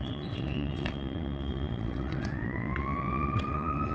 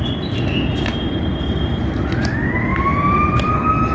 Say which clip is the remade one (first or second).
first